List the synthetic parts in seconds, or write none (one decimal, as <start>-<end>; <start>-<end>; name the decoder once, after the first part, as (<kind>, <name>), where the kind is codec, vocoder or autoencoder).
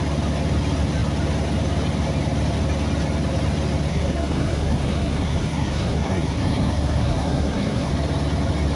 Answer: 3.9-7.9 (codec, SNAC)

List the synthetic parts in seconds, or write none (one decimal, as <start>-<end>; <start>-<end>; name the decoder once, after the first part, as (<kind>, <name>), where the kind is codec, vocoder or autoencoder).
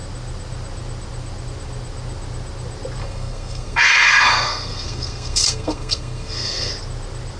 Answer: 3.0-6.7 (codec, SNAC)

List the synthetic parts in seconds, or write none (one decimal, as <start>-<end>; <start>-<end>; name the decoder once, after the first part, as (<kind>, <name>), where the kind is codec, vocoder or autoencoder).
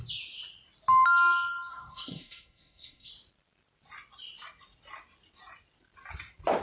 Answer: 1.7-3.1 (codec, SNAC)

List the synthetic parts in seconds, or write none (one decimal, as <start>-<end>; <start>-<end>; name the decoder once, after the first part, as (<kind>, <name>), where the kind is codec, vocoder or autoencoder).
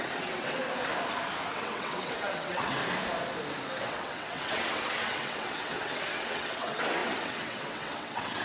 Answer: 0.0-0.6 (vocoder, WaveNeXt); 1.5-2.8; 3.8-8.4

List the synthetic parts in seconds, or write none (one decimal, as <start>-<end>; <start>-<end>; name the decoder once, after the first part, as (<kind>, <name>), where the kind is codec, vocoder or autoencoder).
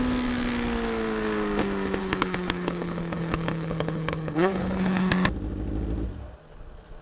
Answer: 2.0-5.1 (codec, HILCodec)